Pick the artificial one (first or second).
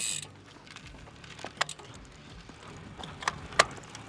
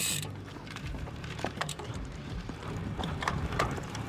second